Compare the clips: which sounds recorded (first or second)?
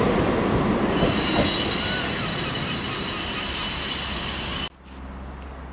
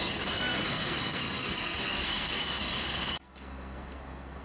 first